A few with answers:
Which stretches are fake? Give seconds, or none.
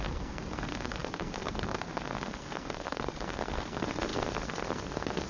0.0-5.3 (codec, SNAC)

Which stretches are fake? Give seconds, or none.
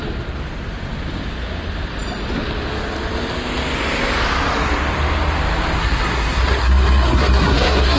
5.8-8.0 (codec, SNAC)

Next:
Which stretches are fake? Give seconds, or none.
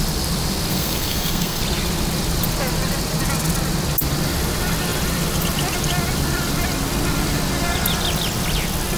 0.7-1.6 (codec, SNAC)